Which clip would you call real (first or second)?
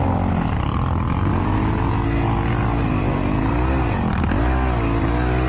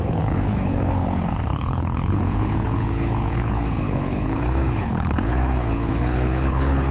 first